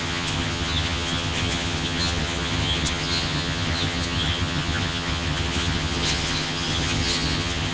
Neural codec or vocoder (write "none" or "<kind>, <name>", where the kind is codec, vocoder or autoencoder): vocoder, HiFi-GAN